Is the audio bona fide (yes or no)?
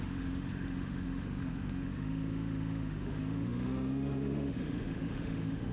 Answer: no